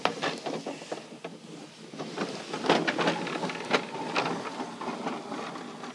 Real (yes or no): yes